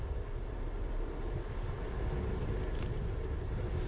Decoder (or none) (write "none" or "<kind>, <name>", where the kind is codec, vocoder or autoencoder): none